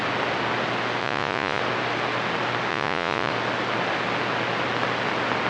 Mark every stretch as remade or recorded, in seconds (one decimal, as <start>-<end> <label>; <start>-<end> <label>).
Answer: 0.0-1.0 recorded; 1.0-1.6 remade; 1.6-2.7 recorded; 2.7-3.3 remade; 3.3-5.5 recorded